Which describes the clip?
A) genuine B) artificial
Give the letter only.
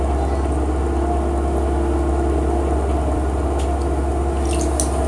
A